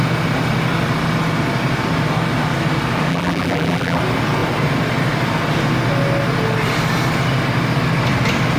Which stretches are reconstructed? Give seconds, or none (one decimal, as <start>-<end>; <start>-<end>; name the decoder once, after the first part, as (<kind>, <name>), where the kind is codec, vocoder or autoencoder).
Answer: 3.1-4.0 (vocoder, BigVGAN v2)